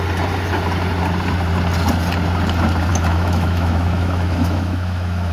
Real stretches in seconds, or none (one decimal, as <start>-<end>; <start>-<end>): 0.0-2.9